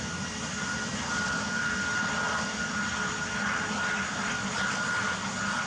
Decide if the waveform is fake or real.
real